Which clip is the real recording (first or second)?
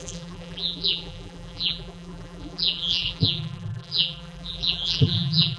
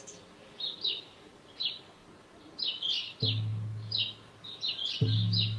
second